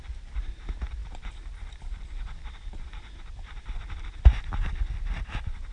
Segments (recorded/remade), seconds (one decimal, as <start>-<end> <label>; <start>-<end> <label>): 0.0-5.7 recorded